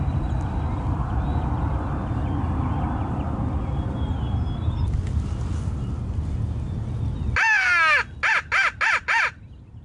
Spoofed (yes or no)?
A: no